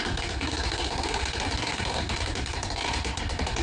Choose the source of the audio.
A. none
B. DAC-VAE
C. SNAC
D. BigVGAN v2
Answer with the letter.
C